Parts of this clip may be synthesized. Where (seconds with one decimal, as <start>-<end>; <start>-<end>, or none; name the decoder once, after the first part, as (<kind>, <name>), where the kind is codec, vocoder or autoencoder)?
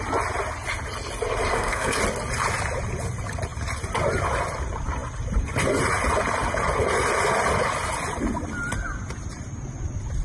1.5-2.0 (codec, SNAC)